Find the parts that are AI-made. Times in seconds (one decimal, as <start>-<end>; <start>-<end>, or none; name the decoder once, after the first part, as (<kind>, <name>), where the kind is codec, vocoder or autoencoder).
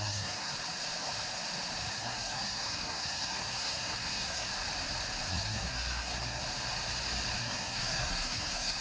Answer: 0.0-0.5 (codec, SNAC); 1.9-4.5; 5.3-6.4; 7.4-8.8